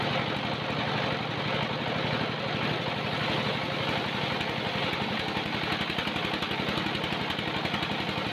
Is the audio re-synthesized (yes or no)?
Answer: no